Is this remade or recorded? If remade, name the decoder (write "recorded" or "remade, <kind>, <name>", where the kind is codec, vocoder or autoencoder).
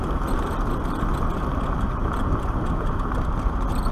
recorded